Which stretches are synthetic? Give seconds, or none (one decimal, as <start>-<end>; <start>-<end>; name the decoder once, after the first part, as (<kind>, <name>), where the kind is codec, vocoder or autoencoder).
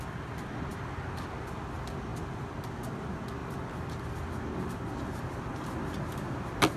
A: none